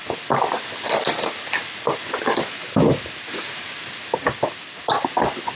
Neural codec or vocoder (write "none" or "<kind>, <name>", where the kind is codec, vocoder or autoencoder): none